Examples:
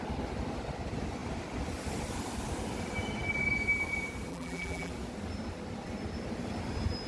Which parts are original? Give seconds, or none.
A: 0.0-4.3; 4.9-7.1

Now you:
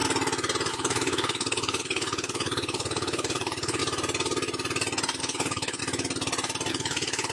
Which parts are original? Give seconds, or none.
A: 0.0-0.7; 3.8-5.2; 5.8-6.7